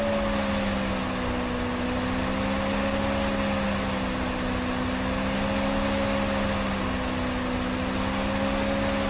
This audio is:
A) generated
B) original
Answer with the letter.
B